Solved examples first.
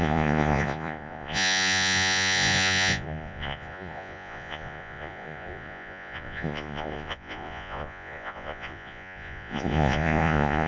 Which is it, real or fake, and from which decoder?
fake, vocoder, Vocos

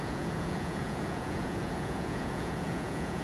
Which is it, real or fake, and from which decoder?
fake, vocoder, Vocos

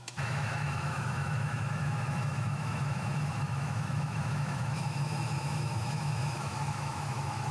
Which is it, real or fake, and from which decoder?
fake, autoencoder, DAC-VAE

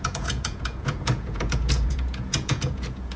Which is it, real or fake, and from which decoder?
fake, vocoder, Vocos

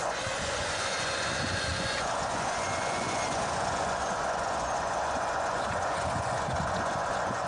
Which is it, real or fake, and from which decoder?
fake, vocoder, Vocos